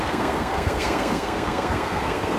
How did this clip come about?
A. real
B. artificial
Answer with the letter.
B